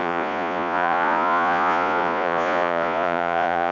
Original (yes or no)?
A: no